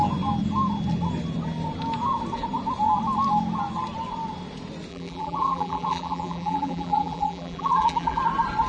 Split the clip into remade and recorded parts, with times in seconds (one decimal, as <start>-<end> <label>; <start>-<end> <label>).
0.0-4.9 recorded; 4.9-8.2 remade; 8.2-8.7 recorded